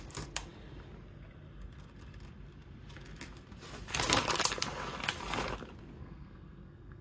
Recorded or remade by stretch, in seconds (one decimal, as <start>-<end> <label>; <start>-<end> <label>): 0.0-6.0 recorded; 6.0-7.0 remade